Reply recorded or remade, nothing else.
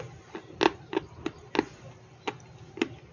recorded